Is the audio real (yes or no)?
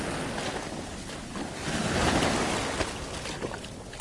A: yes